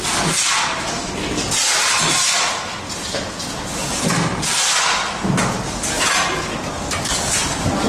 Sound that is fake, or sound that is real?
real